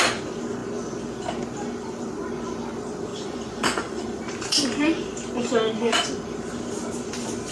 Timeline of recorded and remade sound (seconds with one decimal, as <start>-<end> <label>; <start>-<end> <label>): 0.0-3.1 recorded; 3.1-4.2 remade; 4.2-7.5 recorded